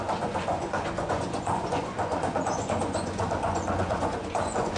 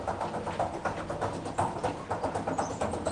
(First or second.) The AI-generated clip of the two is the first